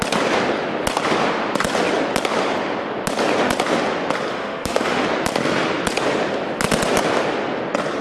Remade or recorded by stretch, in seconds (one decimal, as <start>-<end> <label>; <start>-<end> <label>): 0.0-4.3 recorded; 4.3-5.0 remade; 5.0-8.0 recorded

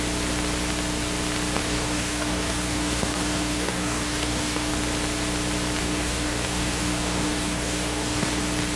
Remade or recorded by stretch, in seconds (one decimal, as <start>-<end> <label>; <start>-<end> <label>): 0.0-1.6 recorded; 1.6-4.7 remade; 4.7-5.8 recorded; 5.8-8.4 remade; 8.4-8.8 recorded